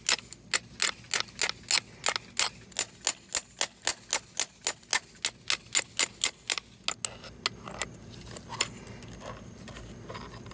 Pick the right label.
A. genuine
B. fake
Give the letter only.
A